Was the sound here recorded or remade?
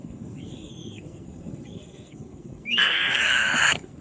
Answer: remade